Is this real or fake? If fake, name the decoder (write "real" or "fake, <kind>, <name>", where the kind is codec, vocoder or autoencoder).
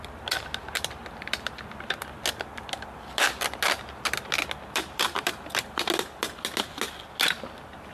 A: real